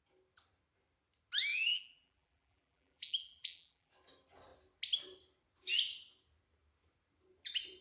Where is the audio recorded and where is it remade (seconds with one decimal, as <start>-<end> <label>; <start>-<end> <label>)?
0.0-1.5 recorded; 1.5-3.9 remade; 3.9-7.8 recorded